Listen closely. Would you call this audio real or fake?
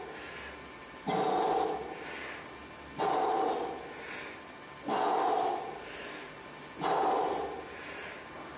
real